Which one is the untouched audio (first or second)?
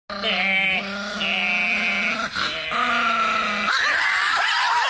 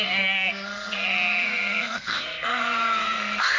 first